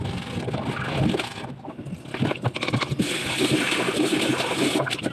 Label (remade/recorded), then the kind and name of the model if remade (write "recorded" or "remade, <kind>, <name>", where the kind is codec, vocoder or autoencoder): recorded